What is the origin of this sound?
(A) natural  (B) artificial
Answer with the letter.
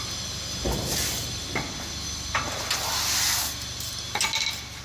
A